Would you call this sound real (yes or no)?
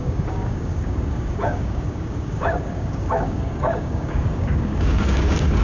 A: no